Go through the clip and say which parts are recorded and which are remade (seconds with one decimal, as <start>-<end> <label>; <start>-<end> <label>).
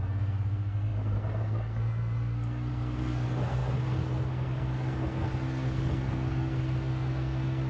0.0-7.7 remade